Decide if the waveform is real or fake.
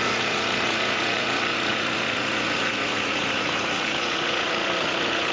fake